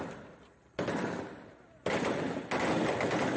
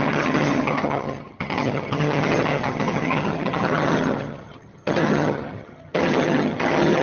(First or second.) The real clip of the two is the first